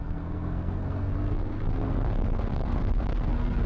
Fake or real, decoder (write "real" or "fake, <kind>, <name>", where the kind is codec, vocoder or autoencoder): fake, codec, SNAC